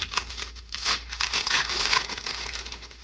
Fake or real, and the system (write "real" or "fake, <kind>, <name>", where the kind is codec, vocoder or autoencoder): fake, autoencoder, DAC-VAE